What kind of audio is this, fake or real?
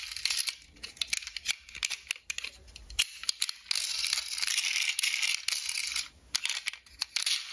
real